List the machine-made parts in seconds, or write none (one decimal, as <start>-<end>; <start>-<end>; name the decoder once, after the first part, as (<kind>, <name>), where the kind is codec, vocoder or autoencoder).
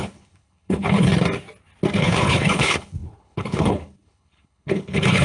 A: 0.0-1.1 (codec, HILCodec); 2.0-5.2